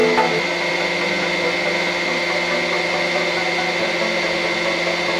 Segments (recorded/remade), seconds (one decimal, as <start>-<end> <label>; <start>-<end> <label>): 0.0-5.2 recorded